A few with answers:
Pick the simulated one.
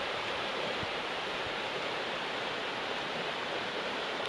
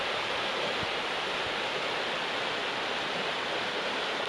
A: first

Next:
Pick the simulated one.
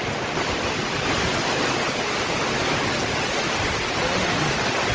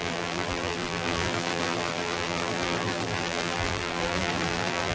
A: second